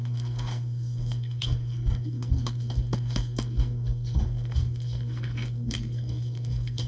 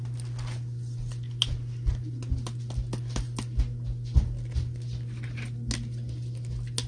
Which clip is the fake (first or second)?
first